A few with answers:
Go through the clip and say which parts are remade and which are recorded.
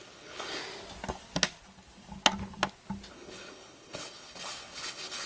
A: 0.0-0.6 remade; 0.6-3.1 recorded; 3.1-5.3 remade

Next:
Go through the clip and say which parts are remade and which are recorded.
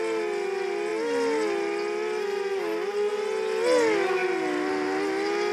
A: 0.0-5.5 recorded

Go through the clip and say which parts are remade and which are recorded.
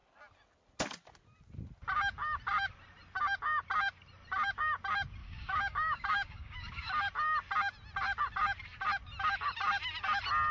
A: 0.0-5.2 recorded; 5.2-6.9 remade; 6.9-10.5 recorded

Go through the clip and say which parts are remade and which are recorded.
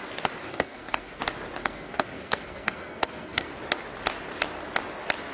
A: 0.0-0.5 recorded; 0.5-1.2 remade; 1.2-1.6 recorded; 1.6-3.5 remade; 3.5-5.3 recorded